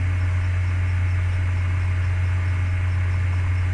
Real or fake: real